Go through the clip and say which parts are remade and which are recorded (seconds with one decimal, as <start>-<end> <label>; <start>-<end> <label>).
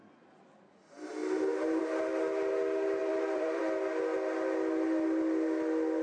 0.0-3.0 recorded; 3.0-3.6 remade; 3.6-6.0 recorded